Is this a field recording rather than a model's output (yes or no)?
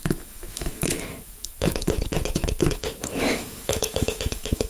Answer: no